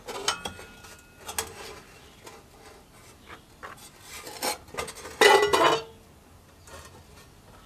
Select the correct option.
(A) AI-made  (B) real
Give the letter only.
B